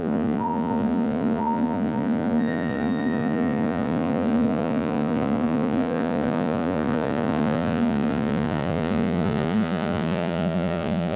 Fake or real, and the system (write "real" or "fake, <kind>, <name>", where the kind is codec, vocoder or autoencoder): fake, vocoder, Vocos